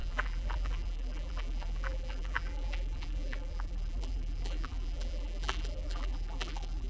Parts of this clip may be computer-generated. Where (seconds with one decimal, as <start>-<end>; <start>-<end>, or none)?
0.0-6.9